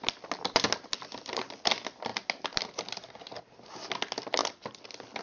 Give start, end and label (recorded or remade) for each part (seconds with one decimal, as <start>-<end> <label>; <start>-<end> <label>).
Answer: 0.0-5.2 recorded